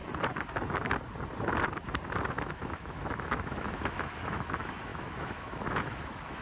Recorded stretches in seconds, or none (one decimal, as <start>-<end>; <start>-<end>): 0.0-2.3